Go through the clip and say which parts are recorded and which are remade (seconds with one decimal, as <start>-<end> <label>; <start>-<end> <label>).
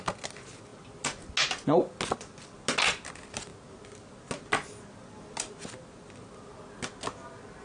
0.0-7.6 recorded